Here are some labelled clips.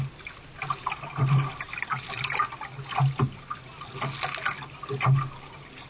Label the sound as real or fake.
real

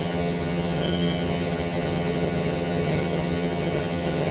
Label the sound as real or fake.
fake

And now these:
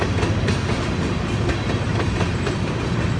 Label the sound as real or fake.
real